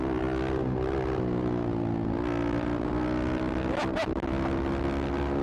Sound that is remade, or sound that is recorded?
recorded